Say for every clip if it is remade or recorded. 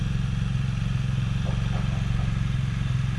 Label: recorded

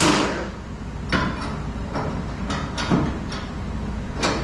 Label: recorded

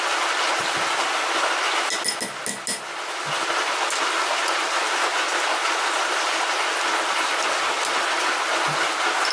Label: recorded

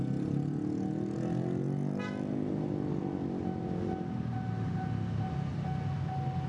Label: recorded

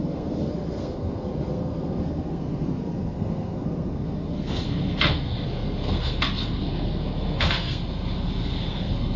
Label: remade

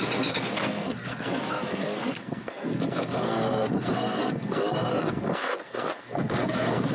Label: remade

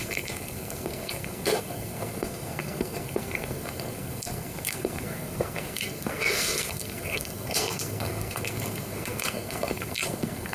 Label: remade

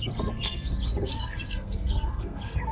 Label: remade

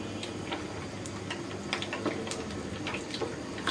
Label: recorded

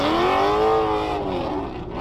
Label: recorded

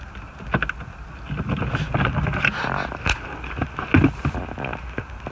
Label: recorded